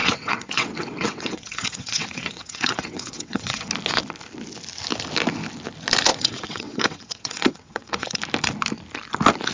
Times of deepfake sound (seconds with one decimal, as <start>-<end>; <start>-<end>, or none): 0.0-3.7; 6.1-8.2

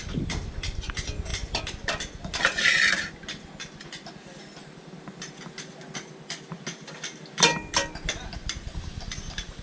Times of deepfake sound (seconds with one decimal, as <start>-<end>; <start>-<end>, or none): none

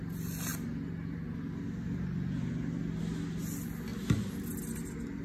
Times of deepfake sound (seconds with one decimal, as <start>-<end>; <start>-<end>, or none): none

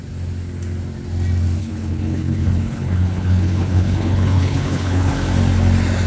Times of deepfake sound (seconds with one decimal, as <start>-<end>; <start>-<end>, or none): 1.6-5.1

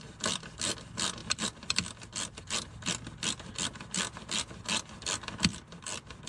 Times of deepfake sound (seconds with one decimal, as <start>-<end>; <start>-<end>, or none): none